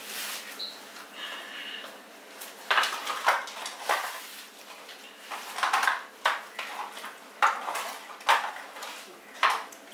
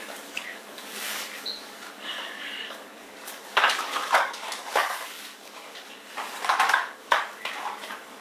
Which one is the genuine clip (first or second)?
first